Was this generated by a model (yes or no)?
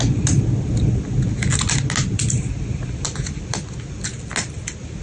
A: no